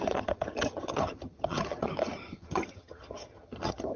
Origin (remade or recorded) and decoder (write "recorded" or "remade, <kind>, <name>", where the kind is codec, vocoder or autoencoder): remade, vocoder, HiFi-GAN